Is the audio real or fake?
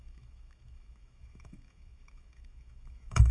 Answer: fake